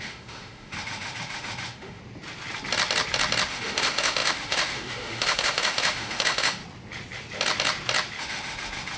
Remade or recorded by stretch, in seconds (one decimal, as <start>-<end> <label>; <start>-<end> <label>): 0.0-2.0 remade; 2.0-3.5 recorded; 3.5-6.6 remade; 6.6-8.2 recorded; 8.2-9.0 remade